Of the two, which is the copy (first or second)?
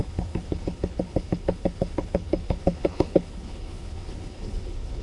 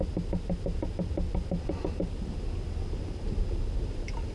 first